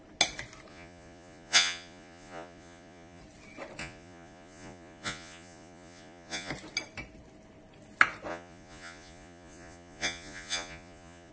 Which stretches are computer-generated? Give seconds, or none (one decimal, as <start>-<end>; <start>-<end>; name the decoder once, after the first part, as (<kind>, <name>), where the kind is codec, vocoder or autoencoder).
0.7-3.2 (vocoder, Vocos); 3.8-6.5; 8.3-11.3